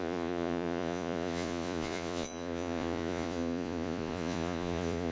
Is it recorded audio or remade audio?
remade